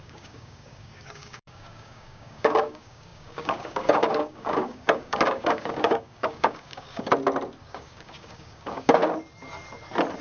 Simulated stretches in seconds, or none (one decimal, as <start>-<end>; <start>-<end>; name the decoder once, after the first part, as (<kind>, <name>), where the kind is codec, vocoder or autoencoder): 0.0-7.1 (codec, DAC); 7.6-9.0